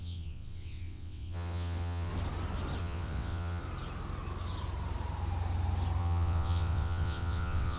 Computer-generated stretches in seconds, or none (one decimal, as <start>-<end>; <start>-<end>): 0.0-2.1; 2.8-3.6; 6.0-7.8